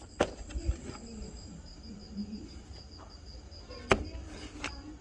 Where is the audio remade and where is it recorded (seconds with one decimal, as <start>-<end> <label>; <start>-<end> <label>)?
0.0-5.0 recorded

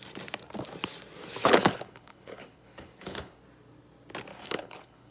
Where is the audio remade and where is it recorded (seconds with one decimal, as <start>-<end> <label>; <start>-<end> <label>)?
0.0-1.4 recorded; 1.4-3.4 remade; 3.4-4.3 recorded; 4.3-5.1 remade